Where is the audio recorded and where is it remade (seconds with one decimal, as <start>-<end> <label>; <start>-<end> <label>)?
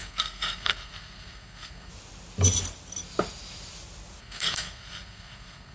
0.0-1.9 remade; 1.9-4.2 recorded; 4.2-5.7 remade